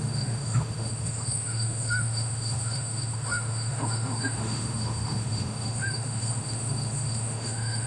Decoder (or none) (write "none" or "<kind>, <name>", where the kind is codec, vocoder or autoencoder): autoencoder, DAC-VAE